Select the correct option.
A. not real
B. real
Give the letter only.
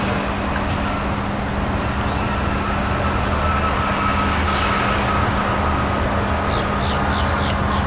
B